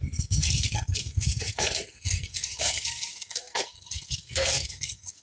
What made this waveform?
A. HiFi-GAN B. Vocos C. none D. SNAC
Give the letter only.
D